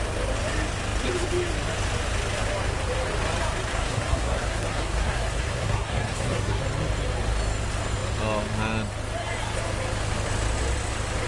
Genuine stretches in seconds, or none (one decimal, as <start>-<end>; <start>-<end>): 0.0-3.7; 6.6-11.3